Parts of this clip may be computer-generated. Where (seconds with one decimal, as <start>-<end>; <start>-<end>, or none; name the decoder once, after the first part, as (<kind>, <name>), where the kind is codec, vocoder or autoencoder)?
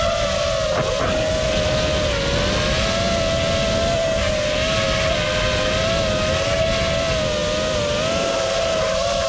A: none